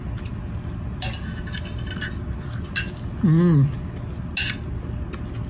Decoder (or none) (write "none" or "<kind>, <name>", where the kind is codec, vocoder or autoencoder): none